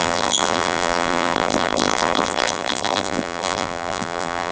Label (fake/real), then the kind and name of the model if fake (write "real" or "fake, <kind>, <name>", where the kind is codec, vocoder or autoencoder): fake, vocoder, BigVGAN v2